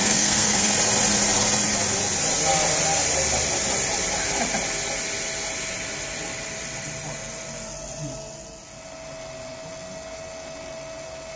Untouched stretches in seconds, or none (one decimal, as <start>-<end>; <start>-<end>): 0.7-11.4

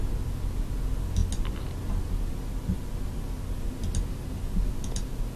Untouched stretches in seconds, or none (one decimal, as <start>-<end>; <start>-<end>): 0.0-5.4

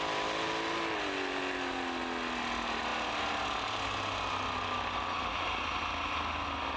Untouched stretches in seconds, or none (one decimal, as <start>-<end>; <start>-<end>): 0.0-6.8

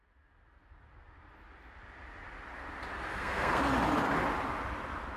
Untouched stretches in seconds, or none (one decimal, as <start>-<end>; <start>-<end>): 0.0-3.1; 3.6-5.2